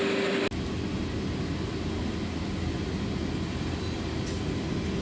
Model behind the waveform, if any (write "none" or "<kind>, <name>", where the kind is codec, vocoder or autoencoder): none